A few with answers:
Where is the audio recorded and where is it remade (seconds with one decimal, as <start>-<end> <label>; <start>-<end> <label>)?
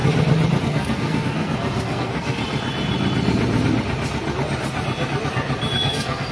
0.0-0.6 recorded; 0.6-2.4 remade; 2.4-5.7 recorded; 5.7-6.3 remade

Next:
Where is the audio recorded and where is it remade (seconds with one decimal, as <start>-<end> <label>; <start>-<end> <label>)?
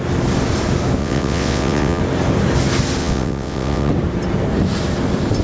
0.0-1.0 recorded; 1.0-2.0 remade; 2.0-3.0 recorded; 3.0-3.9 remade; 3.9-5.4 recorded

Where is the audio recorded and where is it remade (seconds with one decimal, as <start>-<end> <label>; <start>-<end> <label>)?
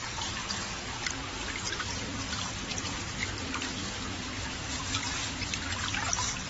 0.0-0.4 remade; 0.4-1.8 recorded; 1.8-3.2 remade; 3.2-6.1 recorded; 6.1-6.5 remade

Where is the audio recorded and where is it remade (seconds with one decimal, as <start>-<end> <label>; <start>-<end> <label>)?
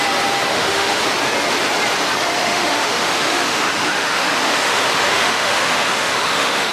0.0-0.5 recorded; 0.5-1.0 remade; 1.0-2.4 recorded; 2.4-6.7 remade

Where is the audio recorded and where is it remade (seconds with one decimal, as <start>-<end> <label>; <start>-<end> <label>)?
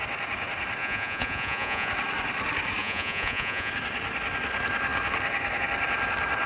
0.0-0.8 recorded; 0.8-1.9 remade; 1.9-2.8 recorded; 2.8-3.7 remade; 3.7-6.5 recorded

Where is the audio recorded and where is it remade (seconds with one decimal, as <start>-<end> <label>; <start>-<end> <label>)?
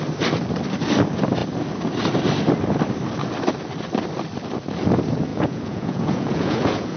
0.0-5.3 recorded; 5.3-7.0 remade